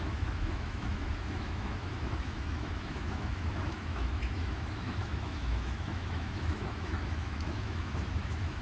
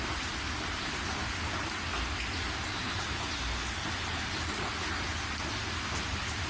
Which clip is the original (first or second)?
second